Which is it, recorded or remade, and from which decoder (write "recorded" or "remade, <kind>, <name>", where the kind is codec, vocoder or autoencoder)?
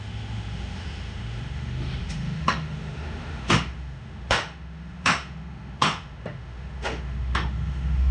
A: remade, autoencoder, DAC-VAE